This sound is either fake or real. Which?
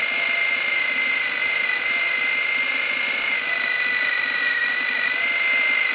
real